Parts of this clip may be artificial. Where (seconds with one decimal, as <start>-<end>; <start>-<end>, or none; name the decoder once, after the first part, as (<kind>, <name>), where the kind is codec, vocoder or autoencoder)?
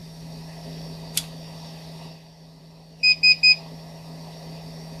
none